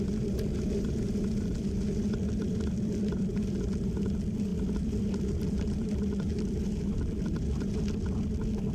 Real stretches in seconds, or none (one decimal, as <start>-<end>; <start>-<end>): none